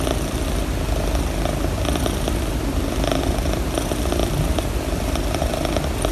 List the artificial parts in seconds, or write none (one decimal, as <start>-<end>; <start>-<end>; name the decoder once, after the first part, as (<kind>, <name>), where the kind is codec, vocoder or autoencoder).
none